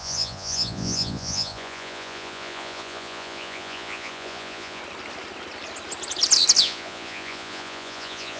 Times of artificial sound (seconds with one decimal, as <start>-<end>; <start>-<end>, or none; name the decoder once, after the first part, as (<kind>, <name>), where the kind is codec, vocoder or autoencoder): 0.0-4.8 (vocoder, Vocos); 6.6-8.4